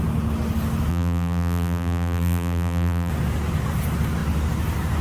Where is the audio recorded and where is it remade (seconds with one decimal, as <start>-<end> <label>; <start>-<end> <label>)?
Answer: 0.0-0.9 recorded; 0.9-3.1 remade; 3.1-5.0 recorded